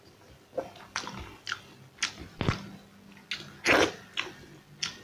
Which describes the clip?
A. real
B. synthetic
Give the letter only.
A